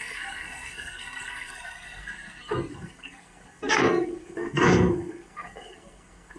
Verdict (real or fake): fake